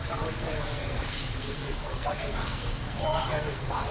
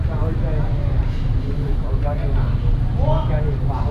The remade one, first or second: first